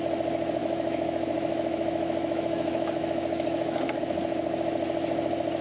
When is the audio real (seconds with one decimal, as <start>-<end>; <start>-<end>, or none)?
0.0-0.6; 4.0-5.6